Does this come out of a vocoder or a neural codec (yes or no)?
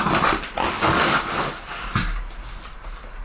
no